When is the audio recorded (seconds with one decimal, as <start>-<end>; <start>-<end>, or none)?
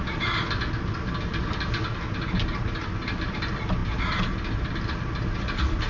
0.0-5.9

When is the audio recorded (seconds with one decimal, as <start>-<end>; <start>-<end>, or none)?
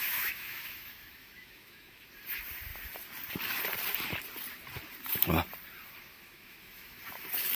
2.1-6.1; 7.0-7.6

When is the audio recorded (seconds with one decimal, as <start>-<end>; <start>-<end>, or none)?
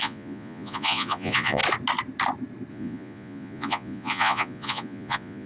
1.6-2.7